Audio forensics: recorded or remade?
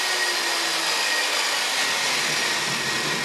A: recorded